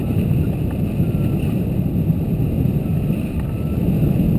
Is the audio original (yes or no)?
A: yes